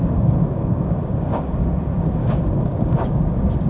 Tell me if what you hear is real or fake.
fake